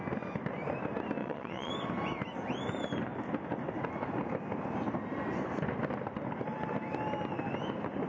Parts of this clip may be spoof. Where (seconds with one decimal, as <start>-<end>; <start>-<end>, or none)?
1.2-1.7